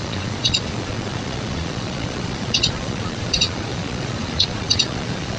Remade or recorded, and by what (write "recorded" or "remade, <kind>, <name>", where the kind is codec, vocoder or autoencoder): remade, vocoder, Vocos